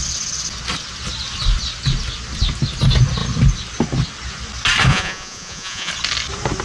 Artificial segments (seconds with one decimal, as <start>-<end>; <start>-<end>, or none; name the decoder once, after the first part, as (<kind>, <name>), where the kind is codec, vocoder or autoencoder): 4.9-5.9 (vocoder, Vocos)